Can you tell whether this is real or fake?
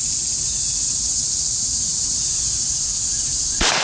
fake